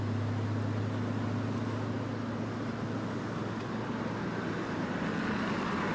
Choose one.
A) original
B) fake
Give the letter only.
A